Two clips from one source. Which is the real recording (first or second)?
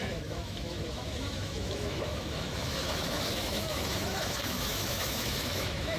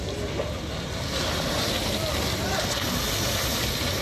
second